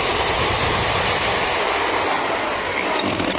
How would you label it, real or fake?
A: real